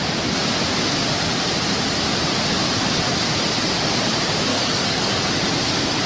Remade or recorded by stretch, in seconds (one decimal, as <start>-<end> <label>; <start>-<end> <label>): 0.0-4.5 recorded; 4.5-5.2 remade; 5.2-6.1 recorded